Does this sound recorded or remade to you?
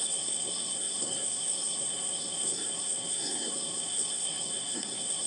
remade